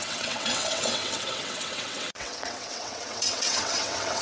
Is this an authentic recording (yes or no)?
no